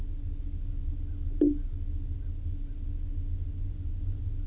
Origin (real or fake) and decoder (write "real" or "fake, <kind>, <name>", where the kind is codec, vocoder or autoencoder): real